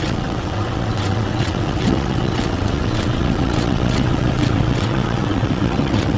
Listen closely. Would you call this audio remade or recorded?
remade